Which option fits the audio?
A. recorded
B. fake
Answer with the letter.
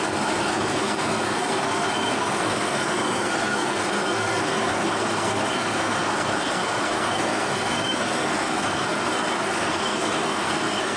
B